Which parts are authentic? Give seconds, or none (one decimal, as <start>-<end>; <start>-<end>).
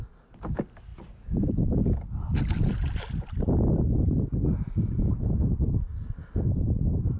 0.0-7.2